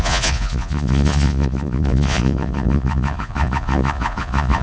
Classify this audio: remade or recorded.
remade